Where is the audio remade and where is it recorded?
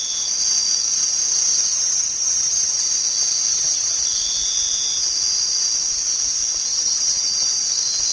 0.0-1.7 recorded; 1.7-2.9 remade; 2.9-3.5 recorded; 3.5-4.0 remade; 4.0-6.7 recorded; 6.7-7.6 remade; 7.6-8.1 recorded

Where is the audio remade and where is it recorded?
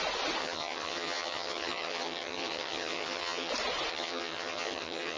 0.0-0.4 recorded; 0.4-3.5 remade; 3.5-3.9 recorded; 3.9-5.2 remade